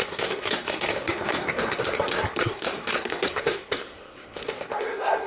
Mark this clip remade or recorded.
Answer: remade